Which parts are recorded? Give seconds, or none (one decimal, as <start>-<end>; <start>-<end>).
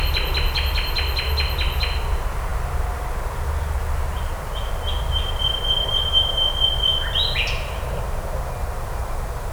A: 0.0-9.5